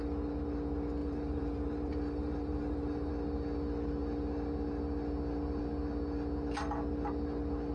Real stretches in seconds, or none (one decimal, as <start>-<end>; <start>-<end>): 0.0-1.0; 3.1-7.7